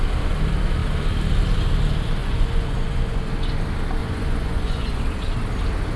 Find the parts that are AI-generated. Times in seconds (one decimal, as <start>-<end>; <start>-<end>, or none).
2.2-3.3; 4.0-5.0